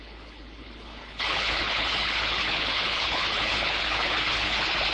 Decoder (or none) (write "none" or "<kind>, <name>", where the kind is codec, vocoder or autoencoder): codec, HILCodec